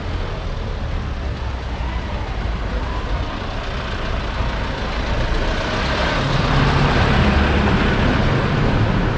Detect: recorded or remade recorded